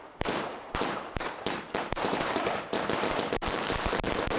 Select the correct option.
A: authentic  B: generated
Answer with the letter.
B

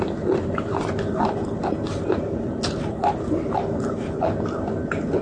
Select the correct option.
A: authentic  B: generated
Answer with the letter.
A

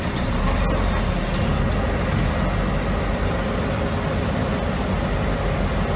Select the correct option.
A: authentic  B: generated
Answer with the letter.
A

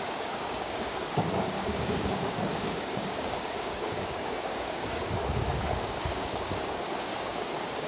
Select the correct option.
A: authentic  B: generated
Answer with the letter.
B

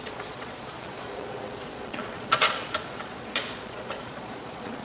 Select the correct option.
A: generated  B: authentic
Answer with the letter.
A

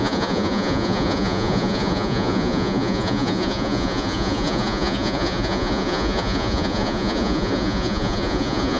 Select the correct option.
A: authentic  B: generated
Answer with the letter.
B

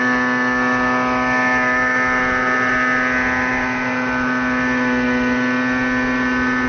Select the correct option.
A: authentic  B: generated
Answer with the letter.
A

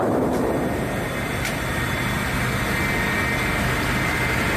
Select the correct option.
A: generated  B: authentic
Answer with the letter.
B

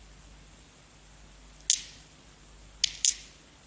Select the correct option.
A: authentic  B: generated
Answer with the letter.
A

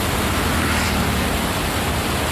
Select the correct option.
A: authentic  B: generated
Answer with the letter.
A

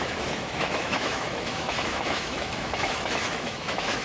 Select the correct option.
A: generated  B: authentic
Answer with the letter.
A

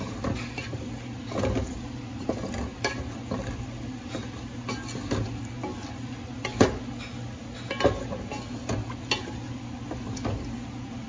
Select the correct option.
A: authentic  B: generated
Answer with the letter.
A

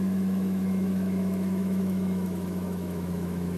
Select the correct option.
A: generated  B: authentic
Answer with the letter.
A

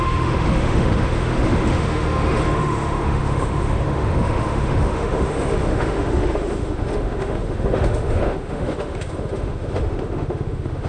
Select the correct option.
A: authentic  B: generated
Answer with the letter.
B